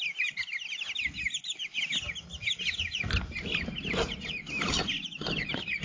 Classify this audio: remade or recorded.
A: recorded